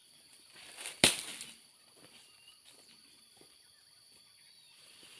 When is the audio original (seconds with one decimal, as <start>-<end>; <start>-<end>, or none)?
0.0-1.3; 1.8-5.2